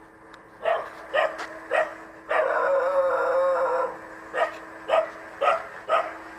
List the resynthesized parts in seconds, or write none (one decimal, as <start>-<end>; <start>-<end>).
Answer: none